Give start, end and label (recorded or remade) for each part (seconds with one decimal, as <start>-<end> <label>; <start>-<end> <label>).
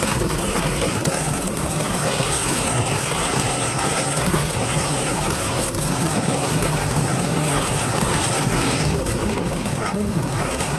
0.0-10.8 remade